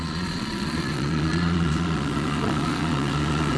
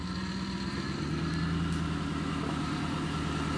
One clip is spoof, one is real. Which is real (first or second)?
second